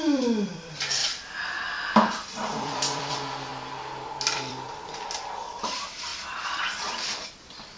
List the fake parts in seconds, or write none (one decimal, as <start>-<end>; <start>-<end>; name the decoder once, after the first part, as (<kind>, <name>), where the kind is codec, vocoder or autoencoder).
0.0-3.5 (vocoder, BigVGAN v2); 4.3-6.1; 7.1-7.8